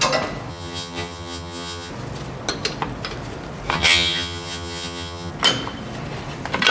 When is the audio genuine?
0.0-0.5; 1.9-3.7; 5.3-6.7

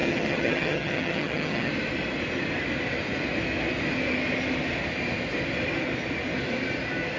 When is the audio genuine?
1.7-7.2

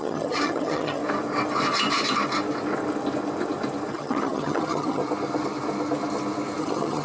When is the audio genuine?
1.0-3.9; 5.0-6.6